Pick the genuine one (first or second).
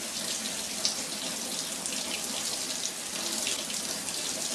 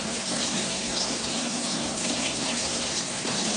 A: first